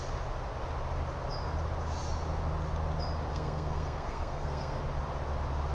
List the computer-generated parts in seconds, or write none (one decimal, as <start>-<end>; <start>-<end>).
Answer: 3.3-4.8

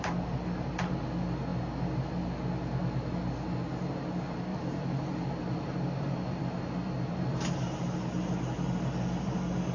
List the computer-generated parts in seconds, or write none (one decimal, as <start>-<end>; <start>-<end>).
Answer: 4.5-7.5

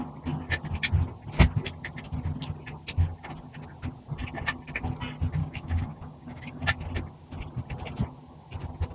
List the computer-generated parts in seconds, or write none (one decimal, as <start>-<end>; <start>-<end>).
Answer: 5.4-6.6

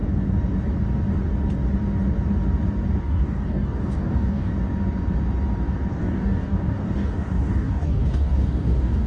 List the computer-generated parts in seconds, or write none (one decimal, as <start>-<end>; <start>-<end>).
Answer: 3.0-4.5; 5.9-9.1

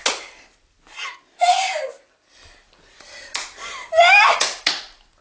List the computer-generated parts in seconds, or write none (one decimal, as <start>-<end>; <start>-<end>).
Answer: none

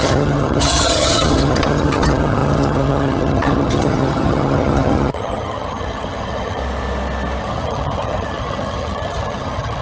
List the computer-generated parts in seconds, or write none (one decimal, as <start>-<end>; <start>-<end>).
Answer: 0.0-6.6; 7.4-9.8

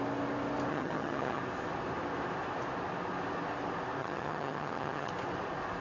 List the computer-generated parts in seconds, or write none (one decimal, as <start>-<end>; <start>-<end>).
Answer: 0.7-1.4; 4.0-5.1